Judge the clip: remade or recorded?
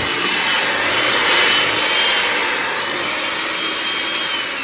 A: recorded